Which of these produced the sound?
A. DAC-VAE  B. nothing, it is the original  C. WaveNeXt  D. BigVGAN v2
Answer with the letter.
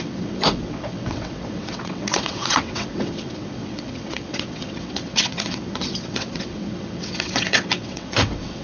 C